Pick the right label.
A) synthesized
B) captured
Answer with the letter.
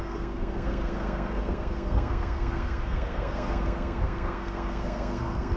A